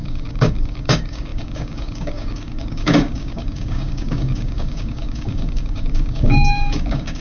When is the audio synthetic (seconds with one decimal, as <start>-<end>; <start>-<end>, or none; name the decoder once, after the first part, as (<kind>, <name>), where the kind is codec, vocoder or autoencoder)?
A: 0.0-7.2 (codec, DAC)

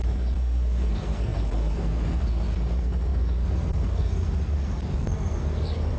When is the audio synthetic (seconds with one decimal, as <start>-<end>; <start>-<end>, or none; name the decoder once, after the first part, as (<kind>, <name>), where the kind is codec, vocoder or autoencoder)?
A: 0.0-6.0 (codec, SNAC)

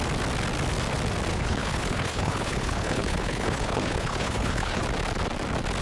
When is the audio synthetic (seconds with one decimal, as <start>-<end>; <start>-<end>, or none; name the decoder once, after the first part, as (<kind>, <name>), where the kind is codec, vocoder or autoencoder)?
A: 1.3-4.8 (codec, HILCodec)

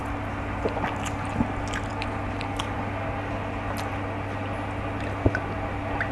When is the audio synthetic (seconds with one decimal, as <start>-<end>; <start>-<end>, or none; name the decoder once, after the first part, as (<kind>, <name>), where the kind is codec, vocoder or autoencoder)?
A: none

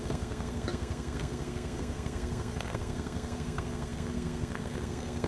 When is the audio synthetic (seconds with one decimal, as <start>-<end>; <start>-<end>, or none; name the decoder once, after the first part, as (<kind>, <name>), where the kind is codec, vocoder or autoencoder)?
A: 0.0-5.3 (codec, SNAC)

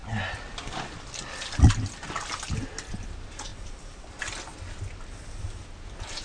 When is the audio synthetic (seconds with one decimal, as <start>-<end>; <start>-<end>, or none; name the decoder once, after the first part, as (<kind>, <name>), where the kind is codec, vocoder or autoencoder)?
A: 3.5-4.2 (vocoder, BigVGAN v2)

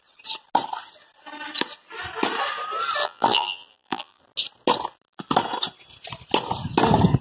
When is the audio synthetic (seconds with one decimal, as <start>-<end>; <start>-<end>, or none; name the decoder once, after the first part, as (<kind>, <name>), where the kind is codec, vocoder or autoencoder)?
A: 3.0-4.2 (vocoder, BigVGAN v2)

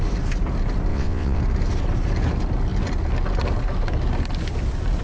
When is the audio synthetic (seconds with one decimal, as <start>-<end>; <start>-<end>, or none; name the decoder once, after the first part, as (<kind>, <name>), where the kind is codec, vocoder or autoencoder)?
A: 0.9-1.4 (vocoder, WaveNeXt)